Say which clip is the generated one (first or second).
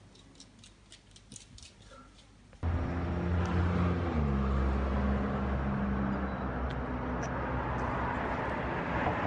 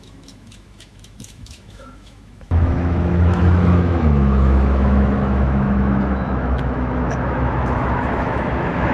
second